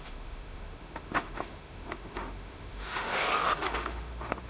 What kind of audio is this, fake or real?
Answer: fake